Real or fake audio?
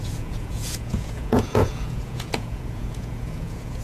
fake